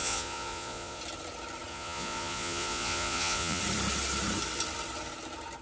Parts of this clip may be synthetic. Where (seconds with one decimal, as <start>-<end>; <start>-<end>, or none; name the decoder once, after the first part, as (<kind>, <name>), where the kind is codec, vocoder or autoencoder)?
0.0-1.0 (vocoder, Vocos); 1.7-3.6